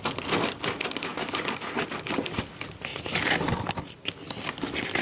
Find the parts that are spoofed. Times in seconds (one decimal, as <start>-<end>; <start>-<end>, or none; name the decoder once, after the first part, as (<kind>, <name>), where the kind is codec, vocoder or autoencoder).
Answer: none